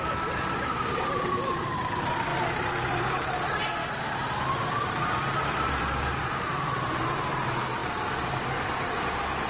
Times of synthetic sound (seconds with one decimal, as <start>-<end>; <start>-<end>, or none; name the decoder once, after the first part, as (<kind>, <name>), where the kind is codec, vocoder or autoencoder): 0.0-9.5 (vocoder, BigVGAN v2)